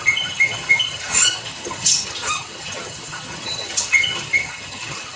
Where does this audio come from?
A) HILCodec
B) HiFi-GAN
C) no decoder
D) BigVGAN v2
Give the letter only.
B